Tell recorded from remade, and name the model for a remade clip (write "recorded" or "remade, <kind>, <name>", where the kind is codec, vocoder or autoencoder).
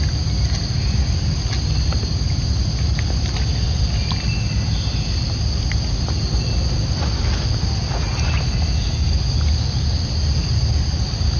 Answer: recorded